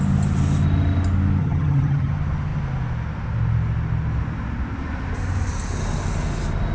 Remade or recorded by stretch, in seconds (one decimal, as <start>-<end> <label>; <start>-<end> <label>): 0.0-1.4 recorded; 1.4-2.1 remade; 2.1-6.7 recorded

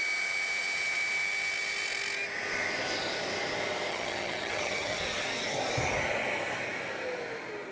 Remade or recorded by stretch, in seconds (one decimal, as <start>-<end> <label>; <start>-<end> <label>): 0.0-3.9 recorded; 3.9-5.0 remade; 5.0-7.7 recorded

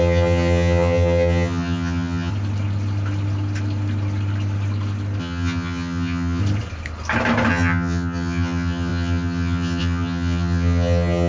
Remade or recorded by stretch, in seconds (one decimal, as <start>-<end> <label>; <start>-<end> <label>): 0.0-2.3 remade; 2.3-5.2 recorded; 5.2-6.4 remade; 6.4-7.5 recorded; 7.5-11.3 remade